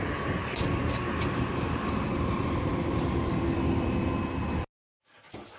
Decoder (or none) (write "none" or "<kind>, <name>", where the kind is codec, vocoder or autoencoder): none